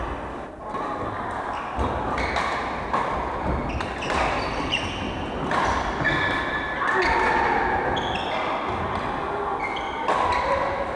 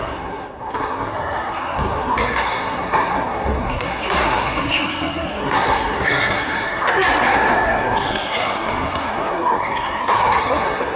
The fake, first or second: second